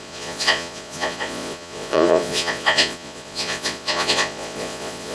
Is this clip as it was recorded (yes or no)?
no